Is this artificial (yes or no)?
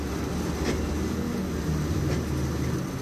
no